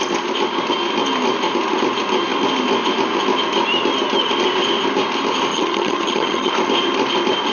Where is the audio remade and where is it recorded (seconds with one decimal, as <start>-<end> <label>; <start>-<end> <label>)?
0.0-5.5 recorded; 5.5-6.5 remade; 6.5-7.5 recorded